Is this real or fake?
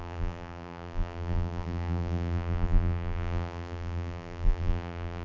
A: fake